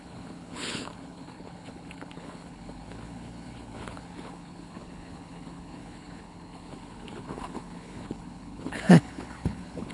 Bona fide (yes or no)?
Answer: no